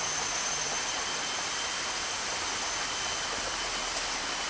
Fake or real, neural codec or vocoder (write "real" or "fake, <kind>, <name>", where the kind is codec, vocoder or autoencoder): real